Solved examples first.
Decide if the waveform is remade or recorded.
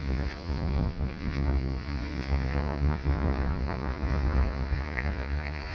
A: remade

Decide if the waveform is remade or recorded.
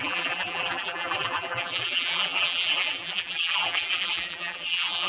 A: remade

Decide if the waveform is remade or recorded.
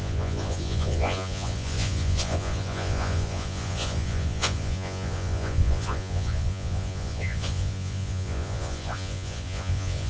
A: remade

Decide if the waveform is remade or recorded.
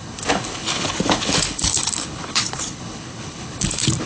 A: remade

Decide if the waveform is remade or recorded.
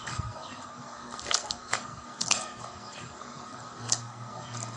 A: remade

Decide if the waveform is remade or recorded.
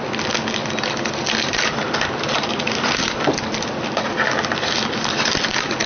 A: recorded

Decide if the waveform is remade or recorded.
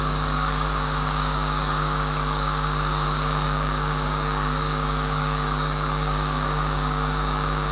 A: remade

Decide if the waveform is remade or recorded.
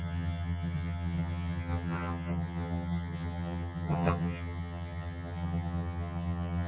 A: remade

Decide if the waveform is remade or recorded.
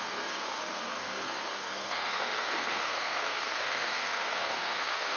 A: remade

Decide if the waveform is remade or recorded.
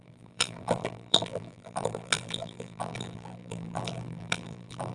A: remade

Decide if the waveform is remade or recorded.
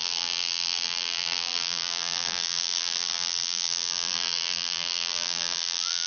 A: remade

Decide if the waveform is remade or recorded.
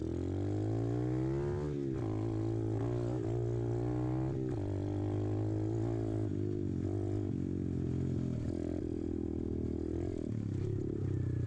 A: recorded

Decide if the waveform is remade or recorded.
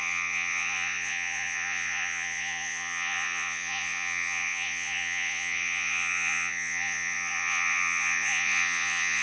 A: remade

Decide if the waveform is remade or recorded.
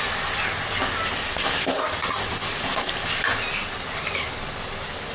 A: recorded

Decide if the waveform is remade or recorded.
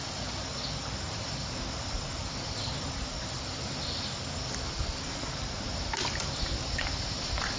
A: recorded